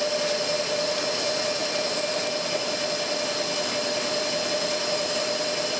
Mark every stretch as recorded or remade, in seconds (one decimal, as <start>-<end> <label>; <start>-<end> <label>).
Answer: 0.0-5.8 recorded